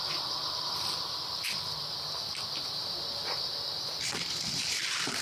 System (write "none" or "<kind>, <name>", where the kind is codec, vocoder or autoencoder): vocoder, BigVGAN v2